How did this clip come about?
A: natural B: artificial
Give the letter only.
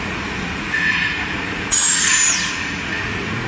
B